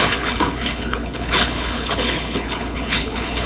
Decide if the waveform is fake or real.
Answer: fake